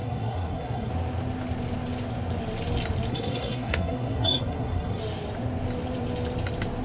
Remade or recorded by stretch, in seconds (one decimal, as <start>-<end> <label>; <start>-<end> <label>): 0.0-0.9 remade; 0.9-3.1 recorded; 3.1-5.0 remade; 5.0-6.8 recorded